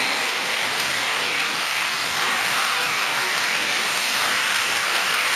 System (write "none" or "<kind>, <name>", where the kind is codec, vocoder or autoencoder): codec, DAC